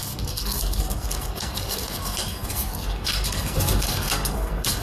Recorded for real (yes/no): no